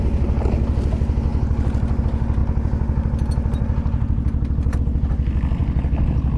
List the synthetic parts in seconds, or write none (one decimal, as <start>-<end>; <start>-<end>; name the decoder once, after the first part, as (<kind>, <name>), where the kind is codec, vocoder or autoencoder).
none